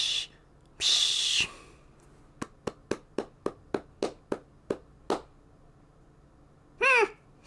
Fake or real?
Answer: real